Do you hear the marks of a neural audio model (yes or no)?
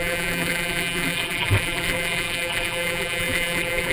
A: yes